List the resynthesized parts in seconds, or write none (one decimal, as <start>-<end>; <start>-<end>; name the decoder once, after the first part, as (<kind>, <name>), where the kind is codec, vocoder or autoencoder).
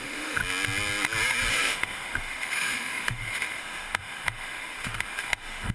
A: 0.0-0.4 (autoencoder, DAC-VAE); 1.5-5.7